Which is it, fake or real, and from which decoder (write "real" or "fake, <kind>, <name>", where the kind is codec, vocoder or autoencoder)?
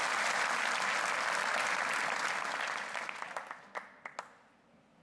real